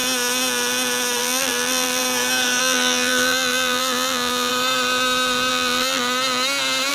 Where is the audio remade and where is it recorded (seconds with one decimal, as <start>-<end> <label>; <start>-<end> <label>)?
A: 0.0-1.2 recorded; 1.2-2.0 remade; 2.0-2.6 recorded; 2.6-4.5 remade; 4.5-5.5 recorded; 5.5-6.0 remade; 6.0-6.9 recorded